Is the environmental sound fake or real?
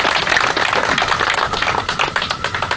real